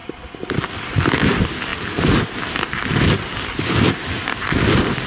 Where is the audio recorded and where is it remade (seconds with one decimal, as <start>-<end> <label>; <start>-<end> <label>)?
0.0-5.1 recorded